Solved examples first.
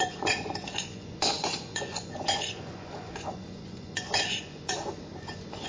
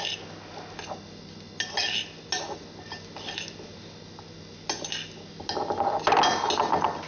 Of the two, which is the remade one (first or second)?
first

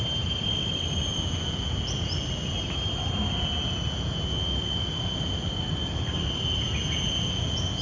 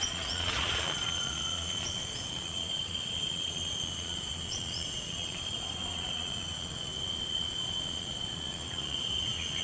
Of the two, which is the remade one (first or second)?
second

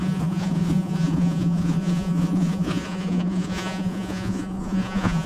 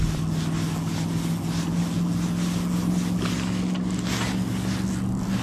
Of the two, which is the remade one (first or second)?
first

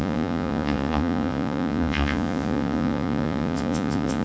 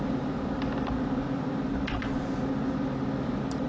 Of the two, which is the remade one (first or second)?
first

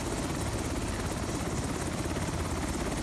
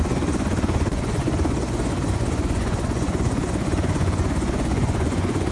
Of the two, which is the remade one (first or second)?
second